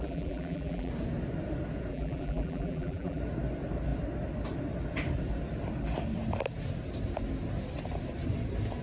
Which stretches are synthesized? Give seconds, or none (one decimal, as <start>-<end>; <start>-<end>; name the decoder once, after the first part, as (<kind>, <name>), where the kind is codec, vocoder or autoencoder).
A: 0.0-0.9 (vocoder, BigVGAN v2); 1.9-3.2